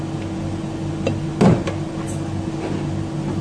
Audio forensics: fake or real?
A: real